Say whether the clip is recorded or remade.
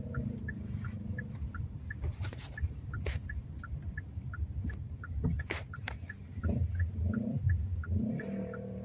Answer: remade